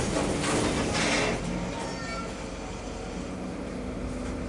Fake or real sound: real